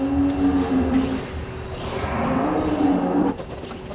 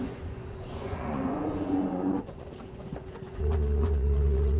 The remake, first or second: second